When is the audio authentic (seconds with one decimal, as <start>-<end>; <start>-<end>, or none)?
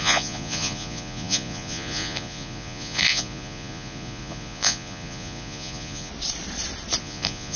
6.1-7.0